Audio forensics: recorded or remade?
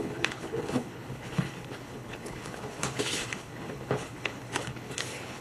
remade